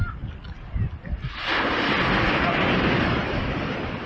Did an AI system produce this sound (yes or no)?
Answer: no